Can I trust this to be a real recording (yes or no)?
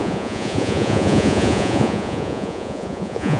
no